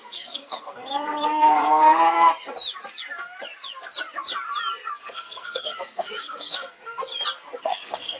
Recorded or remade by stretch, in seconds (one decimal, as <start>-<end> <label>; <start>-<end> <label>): 0.0-2.3 remade; 2.3-5.0 recorded; 5.0-7.1 remade; 7.1-7.6 recorded; 7.6-8.2 remade